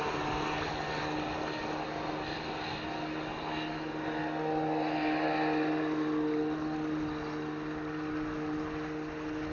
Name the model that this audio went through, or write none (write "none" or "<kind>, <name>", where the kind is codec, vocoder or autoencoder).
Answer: none